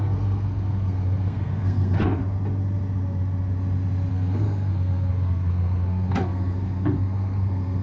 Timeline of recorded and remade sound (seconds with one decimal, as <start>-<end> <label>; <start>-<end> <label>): 0.0-2.2 remade; 2.2-4.1 recorded; 4.1-7.8 remade